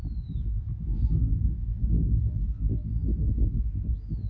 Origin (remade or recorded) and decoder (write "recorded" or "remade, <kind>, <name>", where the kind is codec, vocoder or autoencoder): remade, autoencoder, DAC-VAE